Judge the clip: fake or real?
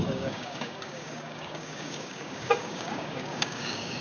fake